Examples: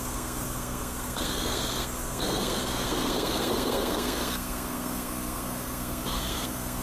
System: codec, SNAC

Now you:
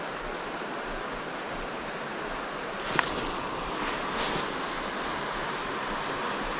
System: none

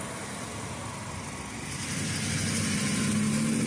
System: none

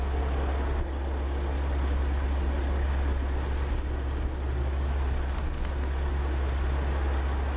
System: none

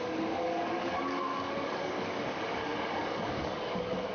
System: codec, DAC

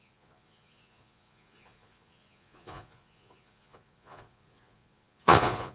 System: vocoder, Vocos